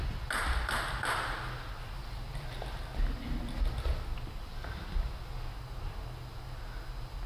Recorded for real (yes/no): yes